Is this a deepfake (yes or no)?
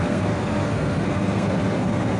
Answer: yes